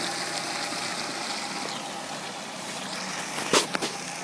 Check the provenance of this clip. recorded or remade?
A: recorded